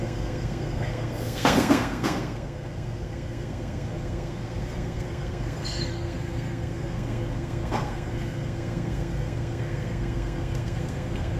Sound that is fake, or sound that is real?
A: fake